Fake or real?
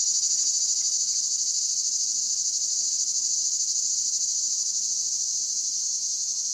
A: real